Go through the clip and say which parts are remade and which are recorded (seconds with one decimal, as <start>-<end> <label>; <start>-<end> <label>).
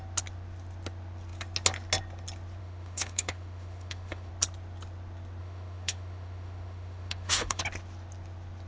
0.0-2.6 recorded; 2.6-4.3 remade; 4.3-5.4 recorded; 5.4-7.6 remade; 7.6-8.7 recorded